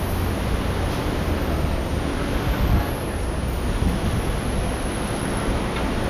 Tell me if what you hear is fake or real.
real